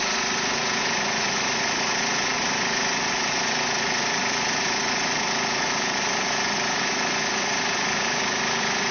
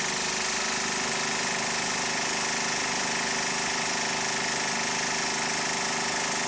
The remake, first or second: first